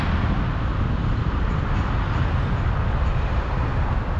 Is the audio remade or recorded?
recorded